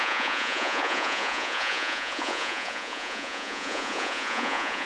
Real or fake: fake